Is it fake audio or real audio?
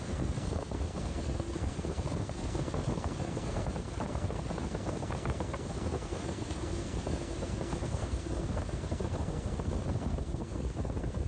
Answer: fake